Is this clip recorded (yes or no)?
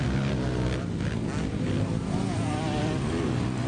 yes